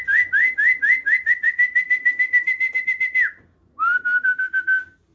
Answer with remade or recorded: recorded